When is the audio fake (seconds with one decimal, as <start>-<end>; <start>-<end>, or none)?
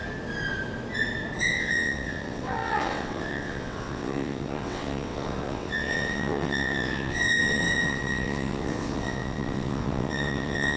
1.5-10.8